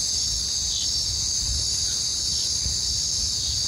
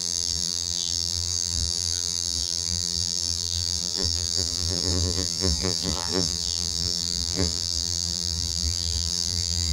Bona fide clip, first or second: first